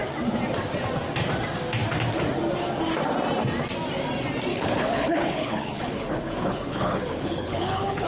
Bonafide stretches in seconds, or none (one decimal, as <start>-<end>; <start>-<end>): 0.0-4.5